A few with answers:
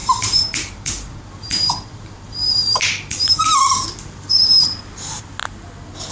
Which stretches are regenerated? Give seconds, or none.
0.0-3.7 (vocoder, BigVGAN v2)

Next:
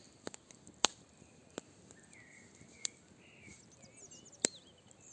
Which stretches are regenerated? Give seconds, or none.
1.4-2.0 (vocoder, BigVGAN v2)